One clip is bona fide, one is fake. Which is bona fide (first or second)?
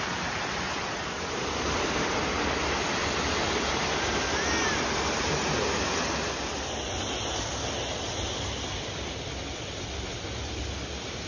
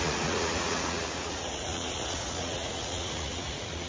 first